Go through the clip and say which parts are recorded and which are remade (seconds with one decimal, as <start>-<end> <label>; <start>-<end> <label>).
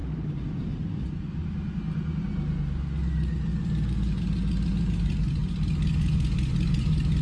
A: 0.0-7.2 recorded